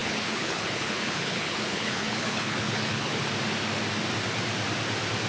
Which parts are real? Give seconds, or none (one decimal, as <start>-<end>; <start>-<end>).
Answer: 3.2-5.3